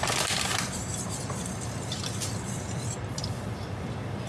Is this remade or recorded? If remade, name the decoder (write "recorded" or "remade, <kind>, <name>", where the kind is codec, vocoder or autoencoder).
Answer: remade, vocoder, BigVGAN v2